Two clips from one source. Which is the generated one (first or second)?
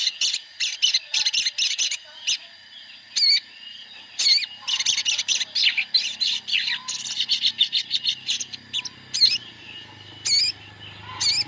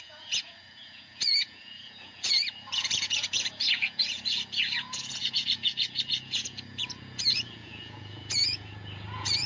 second